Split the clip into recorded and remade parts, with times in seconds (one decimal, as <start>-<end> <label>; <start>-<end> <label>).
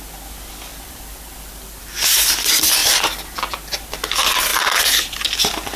0.0-0.7 recorded; 0.7-1.8 remade; 1.8-2.8 recorded; 2.8-3.9 remade; 3.9-4.5 recorded; 4.5-5.8 remade